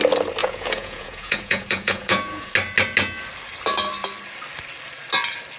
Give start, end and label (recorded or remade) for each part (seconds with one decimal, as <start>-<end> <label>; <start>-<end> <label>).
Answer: 0.0-0.4 recorded; 0.4-2.5 remade; 2.5-5.6 recorded